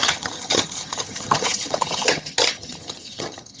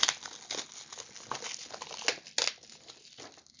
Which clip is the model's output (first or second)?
first